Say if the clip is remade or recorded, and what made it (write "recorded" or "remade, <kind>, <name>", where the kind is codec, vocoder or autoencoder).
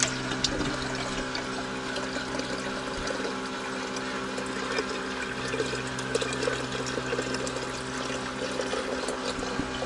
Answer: recorded